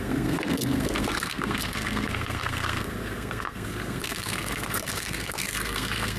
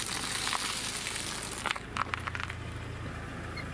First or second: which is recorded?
second